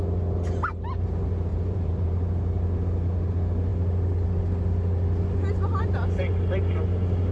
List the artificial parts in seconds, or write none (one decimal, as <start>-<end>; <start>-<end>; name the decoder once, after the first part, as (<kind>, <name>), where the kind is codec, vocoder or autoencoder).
1.5-2.3 (vocoder, BigVGAN v2)